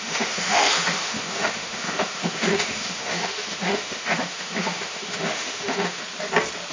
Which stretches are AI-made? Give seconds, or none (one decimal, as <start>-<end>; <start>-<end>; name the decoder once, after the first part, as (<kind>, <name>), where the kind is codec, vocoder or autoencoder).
0.0-6.0 (autoencoder, DAC-VAE)